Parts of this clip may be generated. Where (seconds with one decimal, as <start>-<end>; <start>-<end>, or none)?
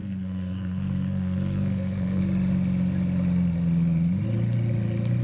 0.0-2.2